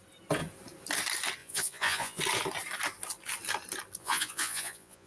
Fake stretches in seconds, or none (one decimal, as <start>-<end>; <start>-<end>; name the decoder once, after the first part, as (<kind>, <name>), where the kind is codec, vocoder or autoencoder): 1.4-2.2 (vocoder, Vocos); 4.0-5.1